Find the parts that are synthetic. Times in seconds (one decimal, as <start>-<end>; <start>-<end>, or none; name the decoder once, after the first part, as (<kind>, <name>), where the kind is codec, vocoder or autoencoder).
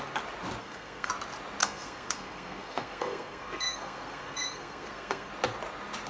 0.6-1.1 (codec, SNAC); 1.6-5.3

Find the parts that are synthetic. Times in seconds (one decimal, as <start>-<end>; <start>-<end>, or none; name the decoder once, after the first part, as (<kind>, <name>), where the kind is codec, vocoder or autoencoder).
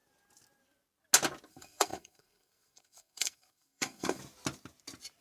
1.5-4.2 (codec, SNAC)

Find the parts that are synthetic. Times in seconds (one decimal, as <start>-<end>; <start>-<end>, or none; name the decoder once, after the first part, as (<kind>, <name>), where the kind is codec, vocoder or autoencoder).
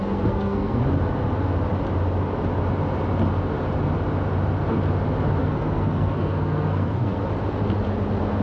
0.0-0.8 (codec, SNAC); 5.4-7.2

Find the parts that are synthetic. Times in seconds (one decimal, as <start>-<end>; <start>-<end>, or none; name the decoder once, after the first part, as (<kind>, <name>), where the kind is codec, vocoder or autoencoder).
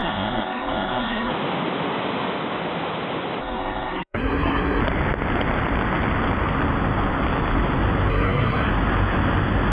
0.0-1.3 (codec, SNAC); 3.4-4.8; 8.1-8.7